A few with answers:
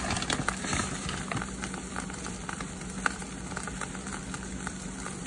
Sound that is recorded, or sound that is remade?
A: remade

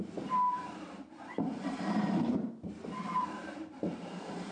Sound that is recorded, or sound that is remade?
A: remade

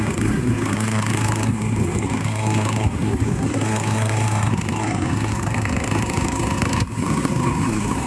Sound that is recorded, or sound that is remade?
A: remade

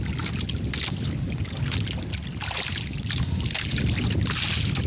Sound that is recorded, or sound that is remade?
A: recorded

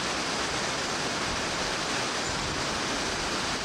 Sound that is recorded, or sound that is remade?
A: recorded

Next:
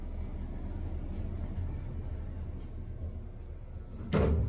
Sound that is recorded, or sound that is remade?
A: recorded